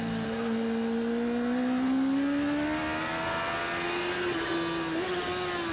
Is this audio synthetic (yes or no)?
no